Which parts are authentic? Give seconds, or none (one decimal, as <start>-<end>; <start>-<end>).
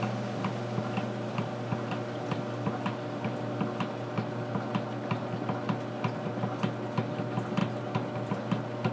0.0-8.9